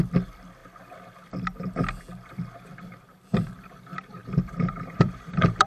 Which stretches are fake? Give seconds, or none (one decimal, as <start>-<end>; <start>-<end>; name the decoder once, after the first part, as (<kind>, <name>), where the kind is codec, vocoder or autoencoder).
4.2-5.7 (vocoder, BigVGAN v2)